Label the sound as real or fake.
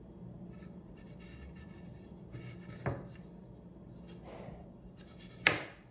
real